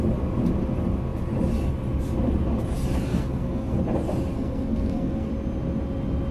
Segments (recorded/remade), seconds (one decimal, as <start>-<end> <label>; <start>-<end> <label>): 0.0-3.1 recorded; 3.1-3.8 remade; 3.8-4.3 recorded; 4.3-5.3 remade; 5.3-6.3 recorded